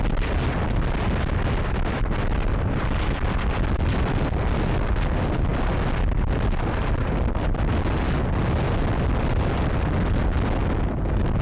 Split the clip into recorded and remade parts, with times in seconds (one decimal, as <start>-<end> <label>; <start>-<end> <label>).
0.0-11.4 recorded